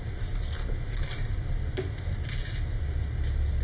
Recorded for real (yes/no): yes